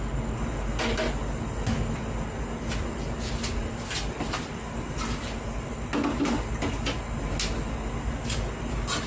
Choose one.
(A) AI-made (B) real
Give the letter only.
B